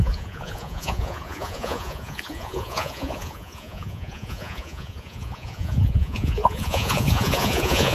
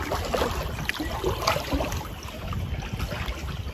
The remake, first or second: first